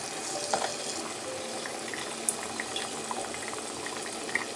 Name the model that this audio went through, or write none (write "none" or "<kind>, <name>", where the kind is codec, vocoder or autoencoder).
none